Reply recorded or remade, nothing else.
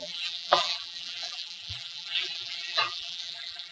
remade